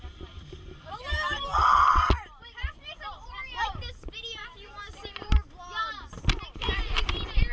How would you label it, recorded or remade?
recorded